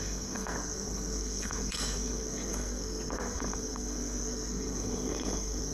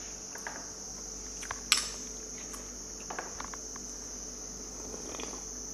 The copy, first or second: first